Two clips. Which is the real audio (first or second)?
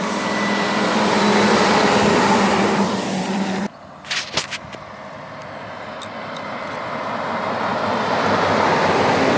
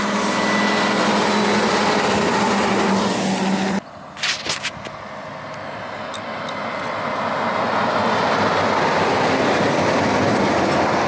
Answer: second